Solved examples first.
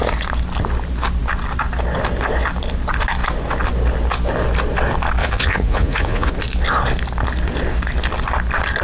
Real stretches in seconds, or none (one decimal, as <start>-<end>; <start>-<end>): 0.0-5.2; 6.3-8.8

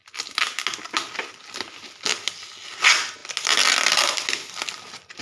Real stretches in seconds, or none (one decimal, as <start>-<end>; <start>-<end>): 0.0-5.2

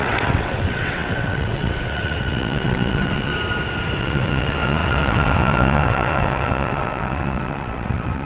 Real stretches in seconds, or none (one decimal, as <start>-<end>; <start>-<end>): 3.3-4.0

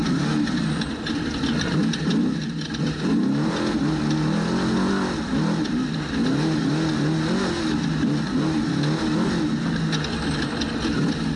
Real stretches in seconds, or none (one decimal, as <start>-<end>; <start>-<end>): 0.0-11.4

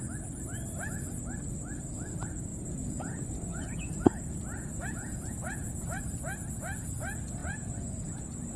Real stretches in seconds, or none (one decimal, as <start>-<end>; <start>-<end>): 0.0-2.5; 6.0-7.4